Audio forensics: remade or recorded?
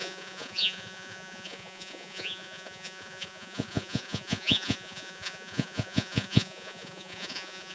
remade